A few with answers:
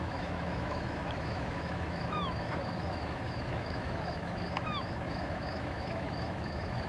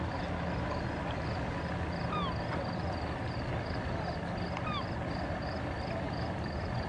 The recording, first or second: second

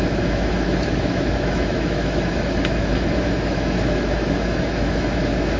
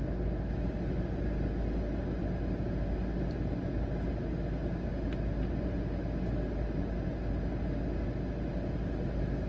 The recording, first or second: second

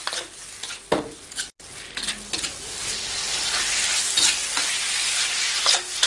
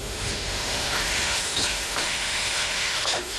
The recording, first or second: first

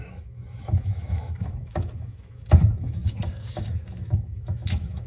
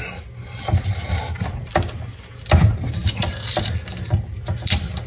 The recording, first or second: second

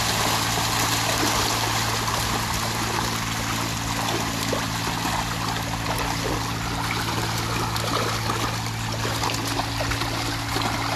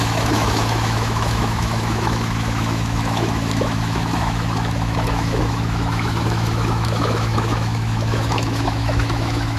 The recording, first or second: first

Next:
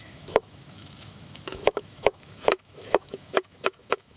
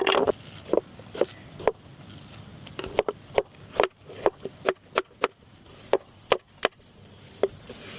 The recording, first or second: second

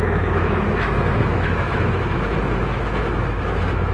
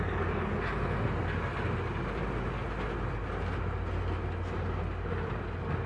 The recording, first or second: second